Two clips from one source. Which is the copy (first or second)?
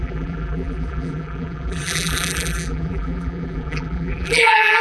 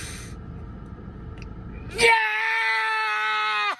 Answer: first